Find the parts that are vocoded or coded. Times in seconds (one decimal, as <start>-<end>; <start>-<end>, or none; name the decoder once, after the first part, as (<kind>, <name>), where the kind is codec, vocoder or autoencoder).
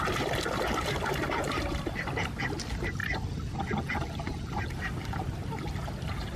none